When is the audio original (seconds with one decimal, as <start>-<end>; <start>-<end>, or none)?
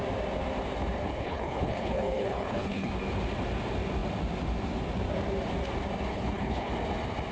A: 0.0-1.1; 2.9-6.1; 6.7-7.3